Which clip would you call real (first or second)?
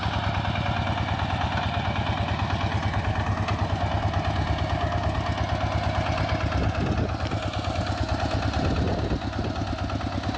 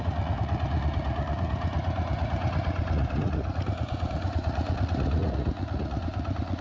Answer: first